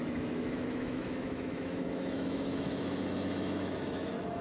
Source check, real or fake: fake